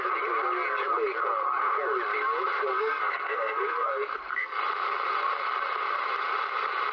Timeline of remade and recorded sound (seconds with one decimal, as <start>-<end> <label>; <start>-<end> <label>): 0.0-2.7 recorded; 2.7-4.6 remade; 4.6-6.9 recorded